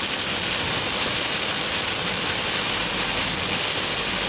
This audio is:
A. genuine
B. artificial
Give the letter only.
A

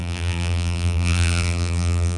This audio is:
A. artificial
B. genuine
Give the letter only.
A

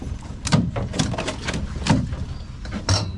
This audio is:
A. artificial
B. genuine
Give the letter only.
A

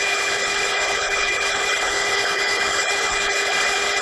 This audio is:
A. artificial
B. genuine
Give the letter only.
A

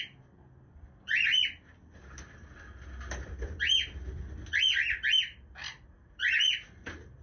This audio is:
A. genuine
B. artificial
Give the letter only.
A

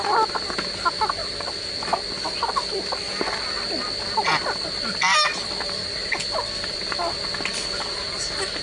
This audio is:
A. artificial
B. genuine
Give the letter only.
B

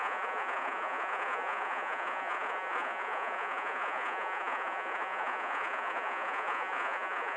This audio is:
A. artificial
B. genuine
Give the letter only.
A